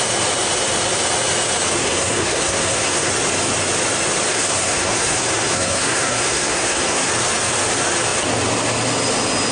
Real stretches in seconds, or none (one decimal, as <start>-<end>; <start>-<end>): 0.0-1.8; 3.1-4.3; 7.1-9.5